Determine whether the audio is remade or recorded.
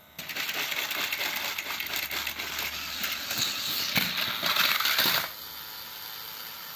recorded